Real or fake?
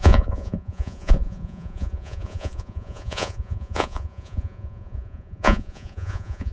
fake